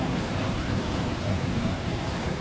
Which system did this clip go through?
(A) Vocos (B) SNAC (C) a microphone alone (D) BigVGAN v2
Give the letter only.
B